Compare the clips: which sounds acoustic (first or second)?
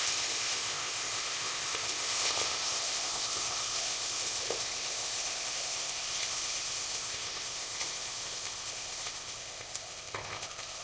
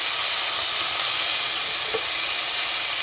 second